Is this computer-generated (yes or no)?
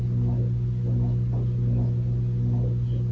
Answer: no